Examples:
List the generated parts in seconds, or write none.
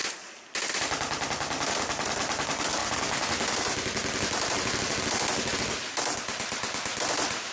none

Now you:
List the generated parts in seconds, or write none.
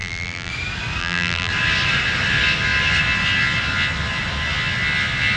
0.0-0.5 (vocoder, BigVGAN v2); 1.0-1.5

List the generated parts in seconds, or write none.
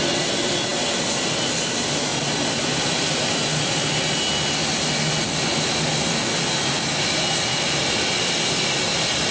2.1-3.8 (vocoder, BigVGAN v2)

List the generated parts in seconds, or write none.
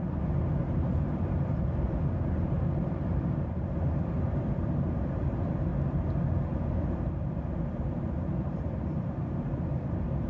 0.0-5.7 (vocoder, BigVGAN v2); 6.4-10.3